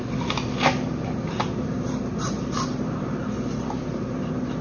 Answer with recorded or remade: remade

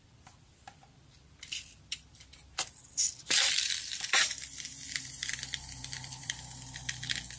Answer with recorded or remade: remade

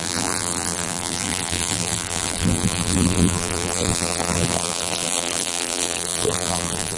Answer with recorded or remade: remade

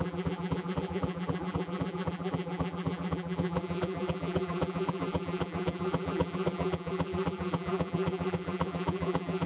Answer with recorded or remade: remade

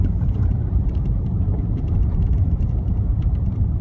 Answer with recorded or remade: remade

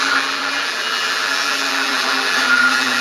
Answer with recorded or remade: remade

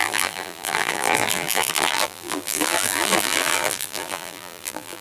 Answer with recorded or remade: remade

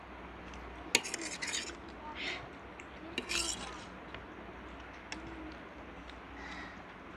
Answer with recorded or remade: recorded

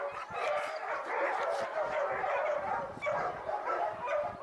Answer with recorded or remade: recorded